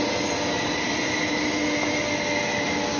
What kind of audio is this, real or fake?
real